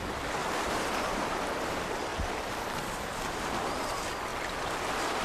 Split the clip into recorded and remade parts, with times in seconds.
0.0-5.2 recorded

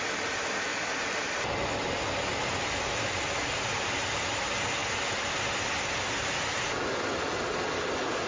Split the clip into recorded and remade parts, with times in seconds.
0.0-0.7 recorded; 0.7-1.4 remade; 1.4-8.3 recorded

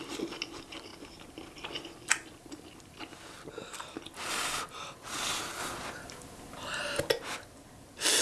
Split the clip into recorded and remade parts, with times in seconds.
0.0-8.2 recorded